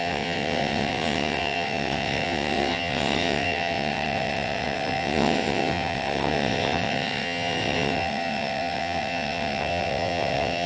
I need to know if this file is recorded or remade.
remade